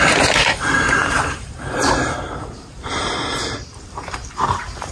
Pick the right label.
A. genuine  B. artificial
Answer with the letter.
B